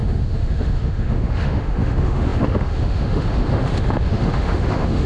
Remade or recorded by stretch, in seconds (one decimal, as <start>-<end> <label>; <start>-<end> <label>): 0.0-5.1 remade